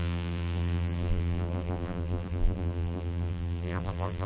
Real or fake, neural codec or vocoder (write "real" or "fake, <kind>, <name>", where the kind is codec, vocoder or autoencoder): fake, vocoder, BigVGAN v2